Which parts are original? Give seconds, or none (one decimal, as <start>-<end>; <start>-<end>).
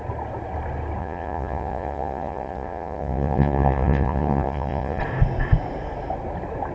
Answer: 0.0-1.0; 5.0-6.7